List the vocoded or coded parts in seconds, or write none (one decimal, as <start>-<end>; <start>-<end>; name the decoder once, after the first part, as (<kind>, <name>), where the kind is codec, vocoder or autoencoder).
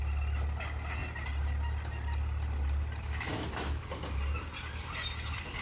none